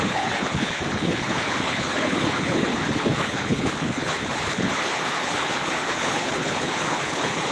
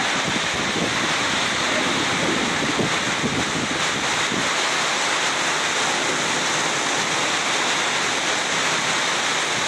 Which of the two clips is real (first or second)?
second